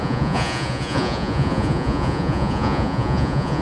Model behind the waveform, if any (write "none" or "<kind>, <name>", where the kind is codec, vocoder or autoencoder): vocoder, Vocos